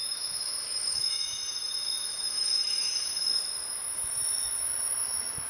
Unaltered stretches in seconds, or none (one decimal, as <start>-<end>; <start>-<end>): 3.3-5.5